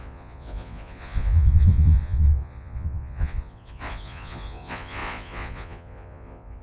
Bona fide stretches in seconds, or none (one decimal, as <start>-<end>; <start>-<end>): none

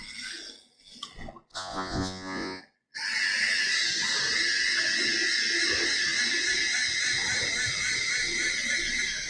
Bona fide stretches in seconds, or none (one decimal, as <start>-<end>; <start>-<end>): 0.0-1.5; 2.6-9.3

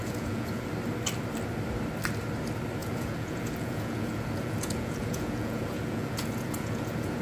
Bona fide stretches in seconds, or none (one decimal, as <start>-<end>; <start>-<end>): 0.7-2.8

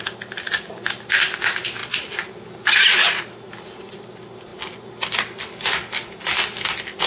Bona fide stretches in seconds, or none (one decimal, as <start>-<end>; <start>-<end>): 0.0-7.1

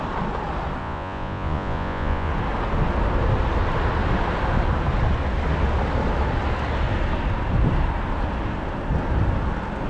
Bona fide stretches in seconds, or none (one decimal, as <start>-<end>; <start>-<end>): 0.0-0.8; 2.3-9.9

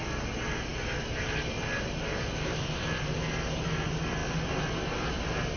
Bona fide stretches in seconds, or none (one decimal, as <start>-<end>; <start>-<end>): 0.0-5.6

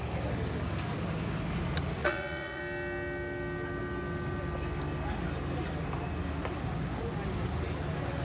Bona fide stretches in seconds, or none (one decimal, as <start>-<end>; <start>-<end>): 0.0-2.0; 2.6-8.2